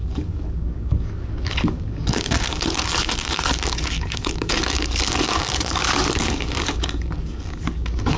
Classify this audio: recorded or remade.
remade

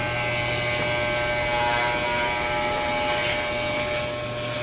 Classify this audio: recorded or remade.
recorded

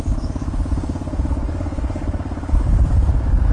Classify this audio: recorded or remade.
remade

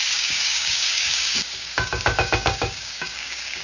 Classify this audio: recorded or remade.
remade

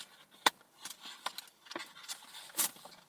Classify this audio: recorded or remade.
recorded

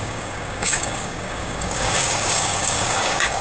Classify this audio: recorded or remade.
remade